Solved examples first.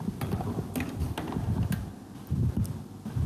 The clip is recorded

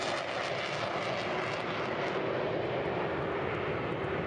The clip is recorded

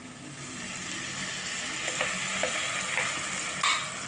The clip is recorded